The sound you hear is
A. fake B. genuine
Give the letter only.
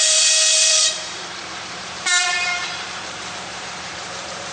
A